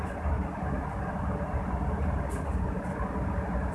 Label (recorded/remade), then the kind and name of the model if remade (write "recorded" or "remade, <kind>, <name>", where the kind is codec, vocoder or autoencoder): recorded